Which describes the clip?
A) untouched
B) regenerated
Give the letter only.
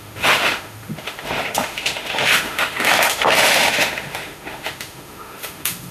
B